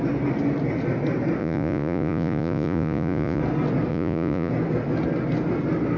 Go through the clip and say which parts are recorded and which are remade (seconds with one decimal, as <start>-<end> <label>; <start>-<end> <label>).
0.0-1.4 recorded; 1.4-3.4 remade; 3.4-3.9 recorded; 3.9-4.5 remade; 4.5-6.0 recorded